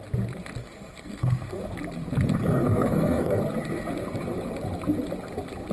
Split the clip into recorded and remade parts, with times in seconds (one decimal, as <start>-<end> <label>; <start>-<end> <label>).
0.0-0.6 recorded; 0.6-1.6 remade; 1.6-2.4 recorded; 2.4-3.4 remade; 3.4-5.7 recorded